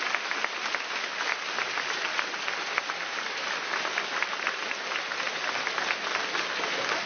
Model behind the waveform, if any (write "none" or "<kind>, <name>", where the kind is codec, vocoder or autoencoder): none